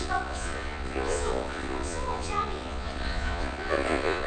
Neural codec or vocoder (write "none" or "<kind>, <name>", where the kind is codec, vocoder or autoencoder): vocoder, Vocos